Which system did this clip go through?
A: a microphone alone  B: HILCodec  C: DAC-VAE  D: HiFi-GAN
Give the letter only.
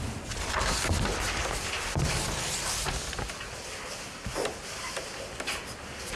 A